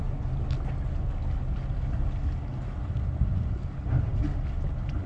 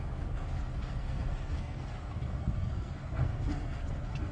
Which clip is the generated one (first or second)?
second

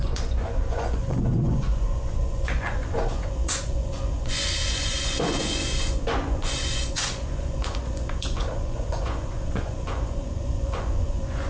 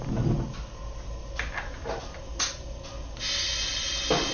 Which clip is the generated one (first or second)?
first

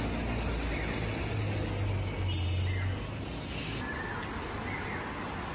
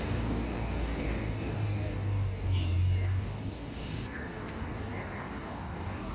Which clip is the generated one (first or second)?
second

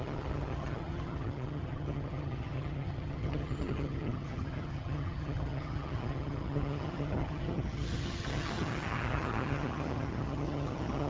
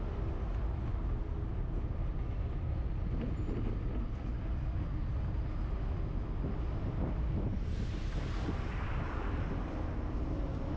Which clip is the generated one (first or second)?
first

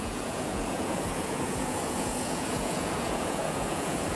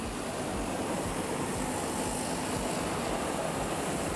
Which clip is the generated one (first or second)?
first